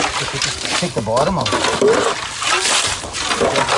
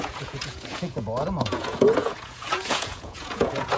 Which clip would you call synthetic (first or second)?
second